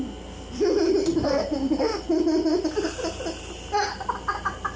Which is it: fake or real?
real